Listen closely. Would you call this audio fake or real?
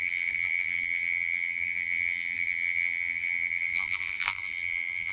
fake